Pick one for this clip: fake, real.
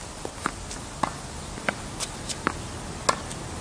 real